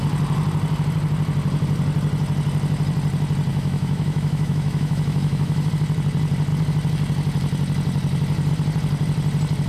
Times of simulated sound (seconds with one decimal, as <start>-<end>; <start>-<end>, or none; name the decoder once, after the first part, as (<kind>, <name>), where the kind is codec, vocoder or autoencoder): 3.5-5.7 (autoencoder, DAC-VAE)